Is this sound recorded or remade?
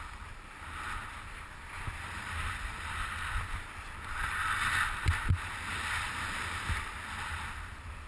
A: recorded